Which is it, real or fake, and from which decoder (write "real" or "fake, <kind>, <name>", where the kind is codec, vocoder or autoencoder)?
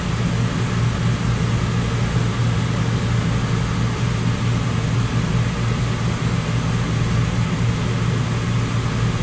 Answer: real